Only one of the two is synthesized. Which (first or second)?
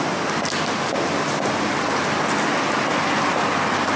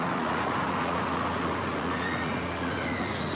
second